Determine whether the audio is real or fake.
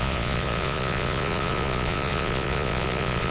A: fake